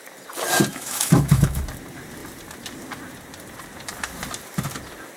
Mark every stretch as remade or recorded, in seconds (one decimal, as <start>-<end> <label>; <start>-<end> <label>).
0.0-0.7 recorded; 0.7-1.6 remade; 1.6-5.2 recorded